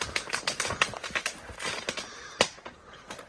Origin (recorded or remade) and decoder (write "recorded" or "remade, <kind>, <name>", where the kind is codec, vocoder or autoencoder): recorded